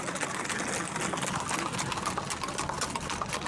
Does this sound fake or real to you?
real